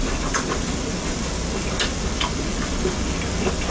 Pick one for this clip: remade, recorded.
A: recorded